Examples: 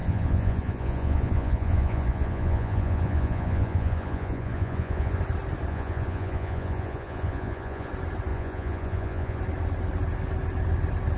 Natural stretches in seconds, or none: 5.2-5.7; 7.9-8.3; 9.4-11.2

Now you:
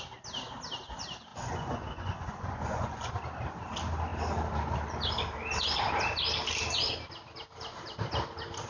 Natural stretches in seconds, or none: 0.0-1.3; 3.1-8.7

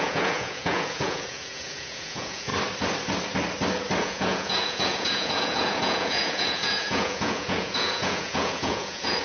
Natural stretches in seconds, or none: 2.5-4.0

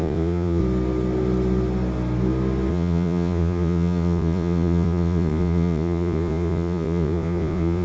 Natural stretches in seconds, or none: 0.6-2.7

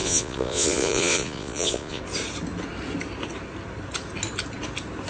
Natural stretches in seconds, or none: 2.0-5.1

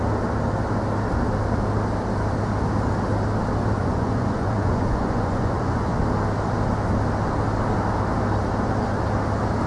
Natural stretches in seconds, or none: 0.0-3.8; 6.0-9.7

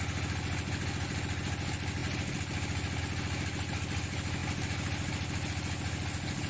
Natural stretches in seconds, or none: 0.0-6.5